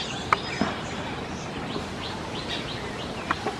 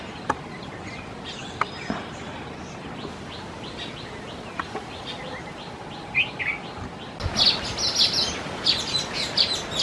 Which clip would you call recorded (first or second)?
second